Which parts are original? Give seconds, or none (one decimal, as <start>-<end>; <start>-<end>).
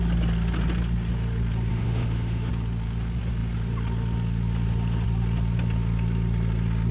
0.0-1.7; 2.5-6.9